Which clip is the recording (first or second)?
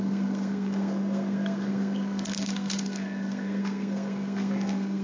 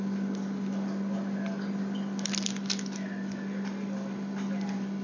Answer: second